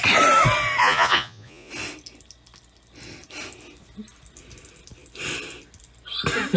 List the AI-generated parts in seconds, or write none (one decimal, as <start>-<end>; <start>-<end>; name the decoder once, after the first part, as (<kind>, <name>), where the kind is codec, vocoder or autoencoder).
0.8-1.7 (vocoder, Vocos)